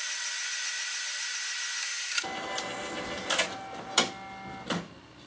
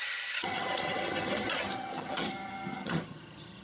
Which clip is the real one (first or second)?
first